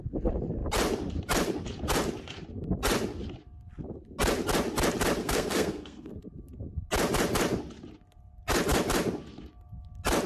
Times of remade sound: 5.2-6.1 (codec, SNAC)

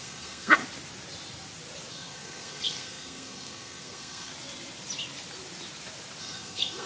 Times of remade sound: 0.0-0.6 (codec, SNAC); 1.9-4.3; 6.2-6.9

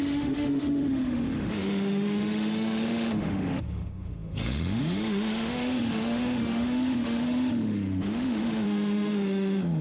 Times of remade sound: 0.0-9.8 (autoencoder, DAC-VAE)